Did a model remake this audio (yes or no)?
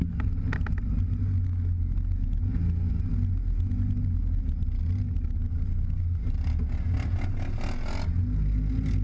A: no